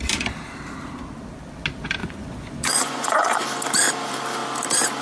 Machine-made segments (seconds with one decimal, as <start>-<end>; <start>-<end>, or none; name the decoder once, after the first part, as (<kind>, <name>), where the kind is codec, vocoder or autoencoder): 2.0-3.4 (vocoder, Vocos)